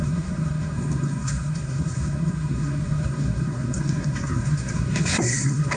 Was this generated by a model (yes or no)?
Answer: yes